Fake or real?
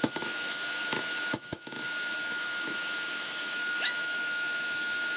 fake